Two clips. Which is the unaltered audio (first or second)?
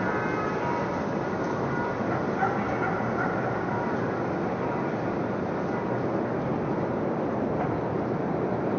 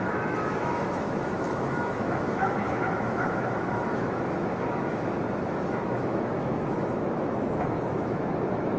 first